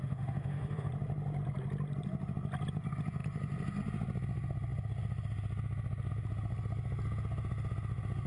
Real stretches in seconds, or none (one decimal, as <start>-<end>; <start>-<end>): 0.9-8.3